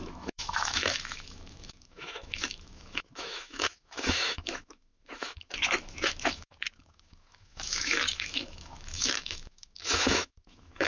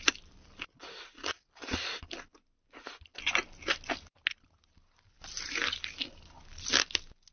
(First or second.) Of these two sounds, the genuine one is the second